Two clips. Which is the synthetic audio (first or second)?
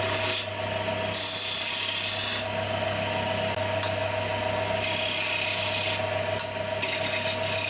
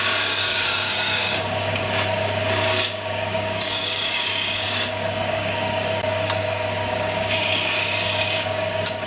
second